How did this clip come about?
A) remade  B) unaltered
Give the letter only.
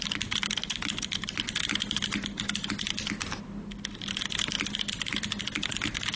B